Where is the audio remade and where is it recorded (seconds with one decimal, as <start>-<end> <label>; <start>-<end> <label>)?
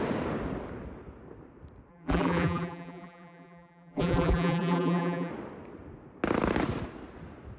0.0-1.9 recorded; 1.9-5.3 remade; 5.3-7.6 recorded